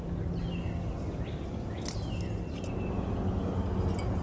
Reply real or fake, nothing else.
real